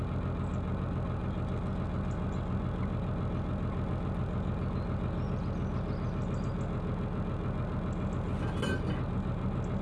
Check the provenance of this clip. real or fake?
real